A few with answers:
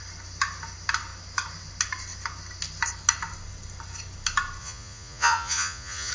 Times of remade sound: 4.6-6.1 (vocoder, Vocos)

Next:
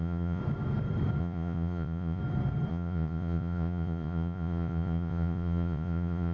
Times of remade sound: 0.0-0.4 (vocoder, Vocos); 1.2-2.2; 2.7-6.3